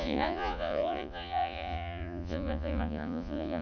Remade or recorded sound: remade